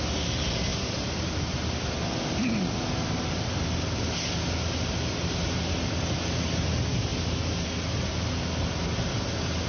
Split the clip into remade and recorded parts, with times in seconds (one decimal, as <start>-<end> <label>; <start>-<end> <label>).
0.0-0.7 recorded; 0.7-1.7 remade; 1.7-9.7 recorded